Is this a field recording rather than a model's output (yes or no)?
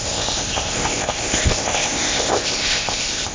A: no